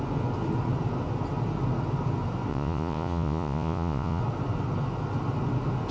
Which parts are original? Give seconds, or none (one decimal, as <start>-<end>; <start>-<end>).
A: 0.0-2.5; 4.2-5.9

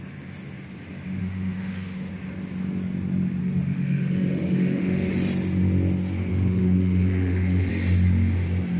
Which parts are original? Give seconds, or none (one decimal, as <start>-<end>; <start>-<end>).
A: 0.0-1.2; 2.1-3.4; 5.1-6.3; 7.7-8.8

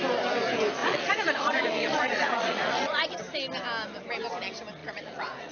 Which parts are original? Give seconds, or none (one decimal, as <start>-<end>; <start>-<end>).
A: 0.0-0.8; 3.2-4.8

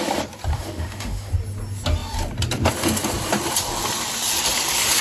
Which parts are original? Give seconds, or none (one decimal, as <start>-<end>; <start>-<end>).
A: 0.0-0.5; 1.3-5.0